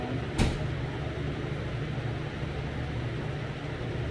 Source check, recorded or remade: recorded